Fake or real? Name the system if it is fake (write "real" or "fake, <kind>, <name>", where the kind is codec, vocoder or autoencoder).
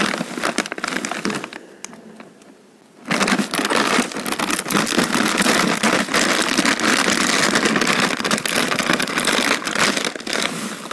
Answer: real